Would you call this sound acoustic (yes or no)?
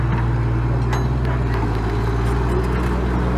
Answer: yes